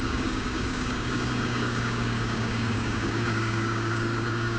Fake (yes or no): yes